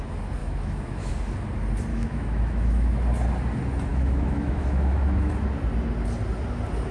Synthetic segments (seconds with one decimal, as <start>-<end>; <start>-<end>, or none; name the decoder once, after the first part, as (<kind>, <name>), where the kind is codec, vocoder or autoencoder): 0.4-1.1 (autoencoder, DAC-VAE); 1.9-2.9; 3.9-5.3